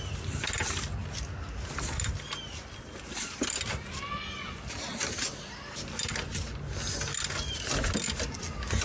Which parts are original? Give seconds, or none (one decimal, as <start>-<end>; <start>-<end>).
0.0-8.8

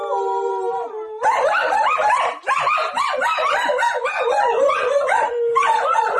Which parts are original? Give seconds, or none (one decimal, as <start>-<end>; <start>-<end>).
0.0-4.0

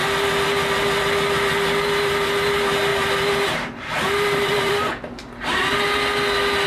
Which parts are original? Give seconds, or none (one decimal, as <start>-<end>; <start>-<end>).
0.0-2.9; 4.9-6.7

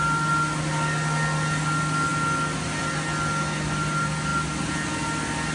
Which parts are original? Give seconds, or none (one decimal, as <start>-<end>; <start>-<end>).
0.0-5.5